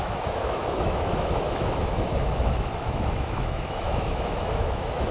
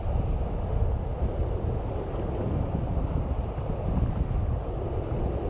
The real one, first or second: second